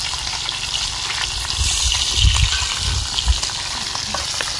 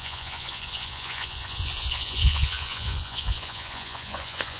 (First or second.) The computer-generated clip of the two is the second